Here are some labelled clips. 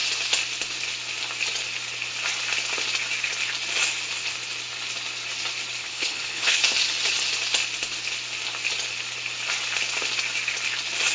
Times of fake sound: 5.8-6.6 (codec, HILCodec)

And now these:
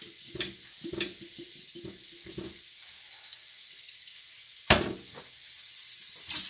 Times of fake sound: none

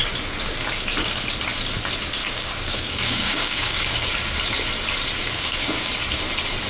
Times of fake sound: 2.2-4.1 (codec, DAC); 5.2-5.9

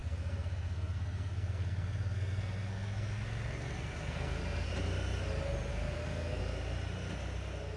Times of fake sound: 0.0-4.7 (codec, SNAC); 5.7-6.4

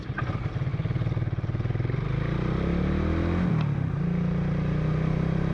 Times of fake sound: none